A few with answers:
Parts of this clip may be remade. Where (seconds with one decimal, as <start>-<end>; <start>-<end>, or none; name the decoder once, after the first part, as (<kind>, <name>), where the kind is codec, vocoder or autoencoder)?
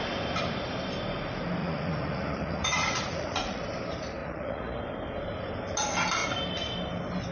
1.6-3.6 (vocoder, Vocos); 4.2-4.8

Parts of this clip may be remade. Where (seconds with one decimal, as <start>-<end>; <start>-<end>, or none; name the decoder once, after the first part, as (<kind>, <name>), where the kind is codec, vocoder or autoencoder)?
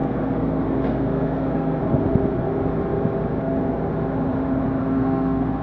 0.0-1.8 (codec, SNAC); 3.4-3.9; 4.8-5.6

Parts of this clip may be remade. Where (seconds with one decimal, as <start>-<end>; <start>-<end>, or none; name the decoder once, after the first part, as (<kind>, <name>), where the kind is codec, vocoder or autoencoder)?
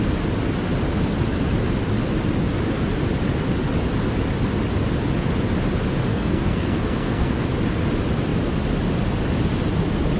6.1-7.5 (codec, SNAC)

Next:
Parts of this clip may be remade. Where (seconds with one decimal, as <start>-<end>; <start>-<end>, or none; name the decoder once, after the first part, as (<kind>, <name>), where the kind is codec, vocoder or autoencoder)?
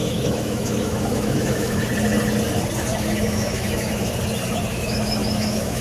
0.0-1.8 (autoencoder, DAC-VAE); 2.9-4.0; 4.7-5.8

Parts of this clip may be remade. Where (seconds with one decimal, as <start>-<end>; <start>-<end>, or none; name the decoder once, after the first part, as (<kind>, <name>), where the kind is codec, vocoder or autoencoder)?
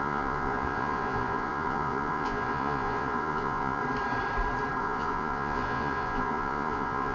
0.0-3.8 (vocoder, Vocos); 4.8-7.1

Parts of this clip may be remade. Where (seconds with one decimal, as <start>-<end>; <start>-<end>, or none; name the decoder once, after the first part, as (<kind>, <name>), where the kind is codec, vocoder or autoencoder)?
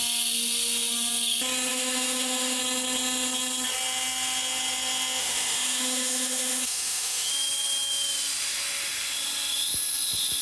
1.7-2.6 (autoencoder, DAC-VAE); 5.2-7.3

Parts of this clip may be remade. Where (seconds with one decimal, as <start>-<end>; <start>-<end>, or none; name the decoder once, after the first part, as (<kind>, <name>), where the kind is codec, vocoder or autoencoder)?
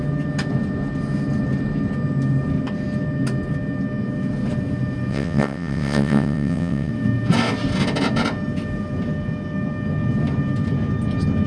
5.1-6.9 (vocoder, WaveNeXt)